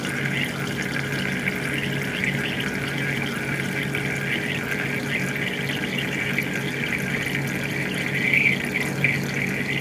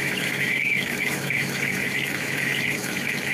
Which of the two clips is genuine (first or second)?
first